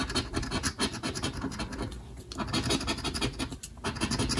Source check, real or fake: real